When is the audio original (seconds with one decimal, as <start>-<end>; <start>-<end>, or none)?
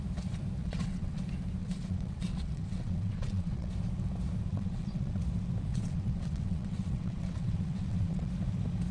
0.0-0.6; 1.2-1.6; 3.7-4.5; 5.2-5.7; 8.3-8.9